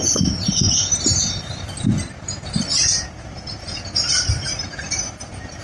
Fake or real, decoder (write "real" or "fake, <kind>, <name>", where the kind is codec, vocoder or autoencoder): real